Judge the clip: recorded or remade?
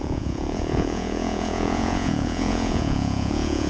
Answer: remade